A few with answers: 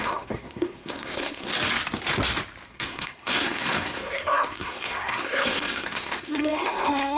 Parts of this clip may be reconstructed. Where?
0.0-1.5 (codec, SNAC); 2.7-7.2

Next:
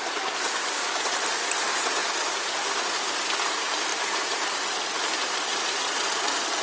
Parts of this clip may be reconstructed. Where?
none